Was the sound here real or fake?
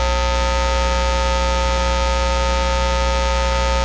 real